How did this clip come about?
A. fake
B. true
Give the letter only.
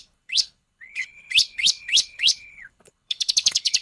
A